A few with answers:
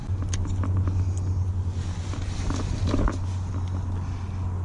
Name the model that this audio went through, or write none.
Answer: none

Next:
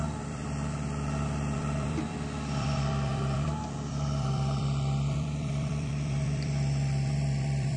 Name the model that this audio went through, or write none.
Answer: vocoder, BigVGAN v2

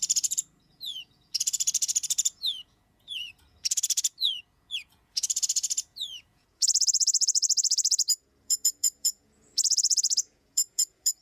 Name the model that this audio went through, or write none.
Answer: vocoder, Vocos